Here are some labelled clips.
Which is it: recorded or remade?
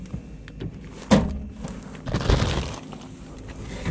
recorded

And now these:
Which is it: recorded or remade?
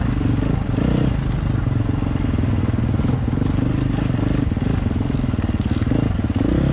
recorded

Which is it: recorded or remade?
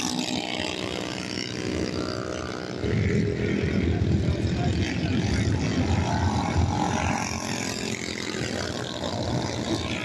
recorded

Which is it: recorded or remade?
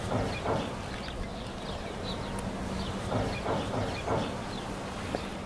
recorded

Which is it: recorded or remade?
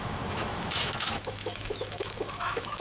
remade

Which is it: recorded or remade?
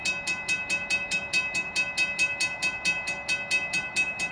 recorded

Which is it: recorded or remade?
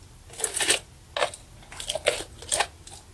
recorded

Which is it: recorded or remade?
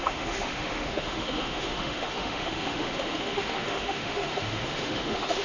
remade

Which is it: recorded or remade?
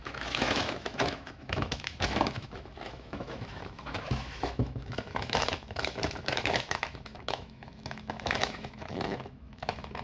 remade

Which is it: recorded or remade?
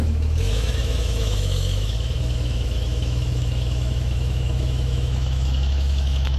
remade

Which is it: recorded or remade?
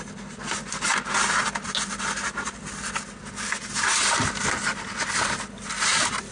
recorded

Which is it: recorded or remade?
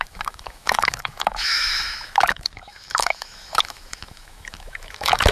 remade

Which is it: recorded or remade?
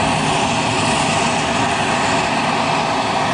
recorded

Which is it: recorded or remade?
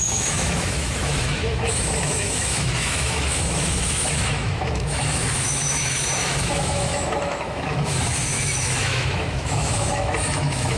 remade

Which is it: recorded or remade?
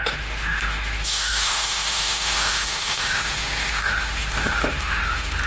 remade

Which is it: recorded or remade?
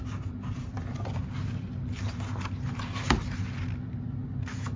recorded